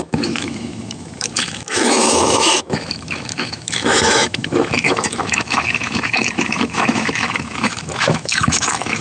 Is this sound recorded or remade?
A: remade